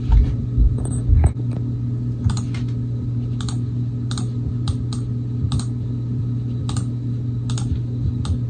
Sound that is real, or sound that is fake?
real